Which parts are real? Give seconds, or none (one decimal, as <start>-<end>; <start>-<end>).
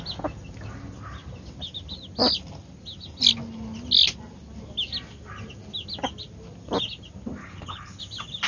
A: 0.0-7.4; 8.0-8.5